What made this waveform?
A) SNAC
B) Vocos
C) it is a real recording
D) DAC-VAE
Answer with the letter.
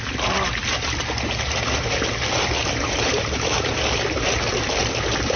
C